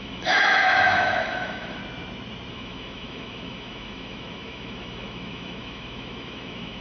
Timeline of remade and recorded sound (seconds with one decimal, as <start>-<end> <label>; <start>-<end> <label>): 0.0-1.8 remade; 1.8-2.5 recorded; 2.5-6.8 remade